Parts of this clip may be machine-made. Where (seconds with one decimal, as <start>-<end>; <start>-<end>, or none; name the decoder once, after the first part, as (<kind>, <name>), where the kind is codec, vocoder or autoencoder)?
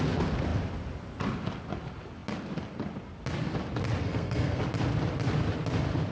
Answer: 4.0-4.6 (codec, SNAC)